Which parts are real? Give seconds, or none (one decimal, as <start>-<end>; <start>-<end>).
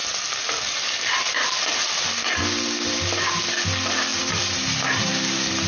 0.0-4.1; 5.1-5.7